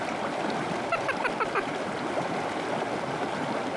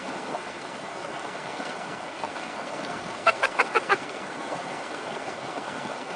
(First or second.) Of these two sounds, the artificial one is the second